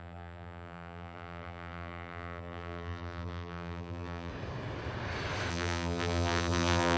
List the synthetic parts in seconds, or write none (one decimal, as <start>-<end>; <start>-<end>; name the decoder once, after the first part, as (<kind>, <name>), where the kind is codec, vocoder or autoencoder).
0.0-4.3 (vocoder, BigVGAN v2); 5.5-7.0